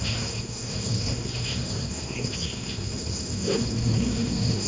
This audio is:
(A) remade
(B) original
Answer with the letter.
A